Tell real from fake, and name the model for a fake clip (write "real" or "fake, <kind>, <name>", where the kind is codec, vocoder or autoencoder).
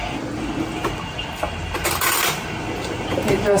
real